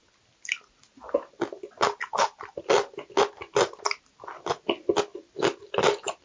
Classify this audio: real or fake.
real